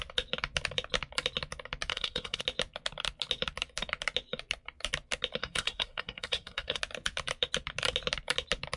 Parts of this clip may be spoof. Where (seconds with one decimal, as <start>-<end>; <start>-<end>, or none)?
1.9-2.4; 5.4-6.8